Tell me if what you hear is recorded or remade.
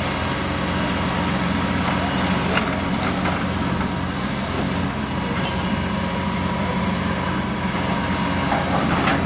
recorded